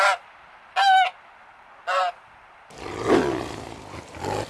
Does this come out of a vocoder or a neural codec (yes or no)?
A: no